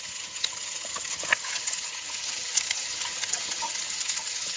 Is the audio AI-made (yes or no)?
yes